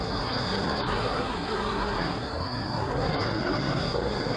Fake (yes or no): yes